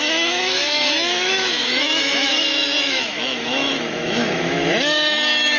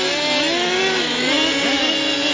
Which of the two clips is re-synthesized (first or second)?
first